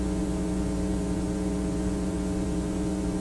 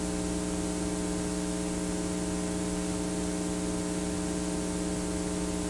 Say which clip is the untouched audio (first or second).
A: second